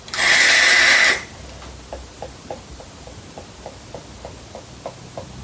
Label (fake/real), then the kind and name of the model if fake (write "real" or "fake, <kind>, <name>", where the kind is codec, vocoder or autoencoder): real